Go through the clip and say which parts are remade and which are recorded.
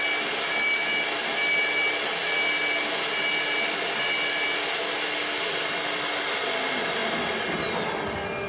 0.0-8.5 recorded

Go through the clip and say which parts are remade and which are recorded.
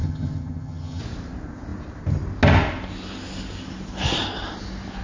0.0-1.0 remade; 1.0-5.0 recorded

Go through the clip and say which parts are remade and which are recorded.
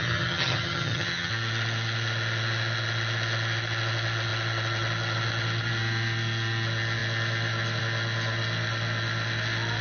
0.0-1.3 remade; 1.3-9.8 recorded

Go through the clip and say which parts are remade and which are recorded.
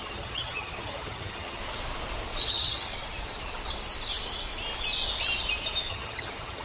0.0-1.6 remade; 1.6-2.5 recorded; 2.5-2.9 remade; 2.9-5.9 recorded; 5.9-6.6 remade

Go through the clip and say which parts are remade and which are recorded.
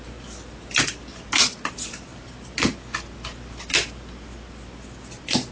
0.0-5.5 recorded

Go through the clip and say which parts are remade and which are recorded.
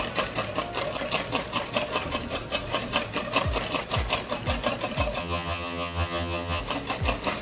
0.0-5.2 recorded; 5.2-6.6 remade; 6.6-7.4 recorded